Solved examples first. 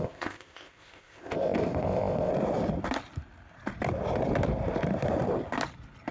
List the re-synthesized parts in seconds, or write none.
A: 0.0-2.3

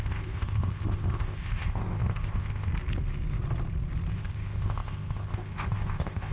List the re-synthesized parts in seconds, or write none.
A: 0.0-2.7; 4.1-6.3

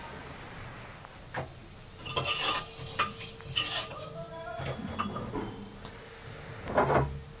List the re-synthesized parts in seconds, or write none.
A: none